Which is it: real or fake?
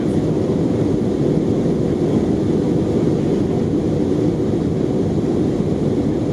real